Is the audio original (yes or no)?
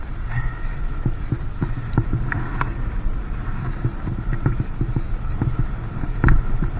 no